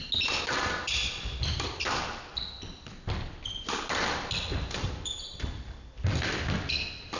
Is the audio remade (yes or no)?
no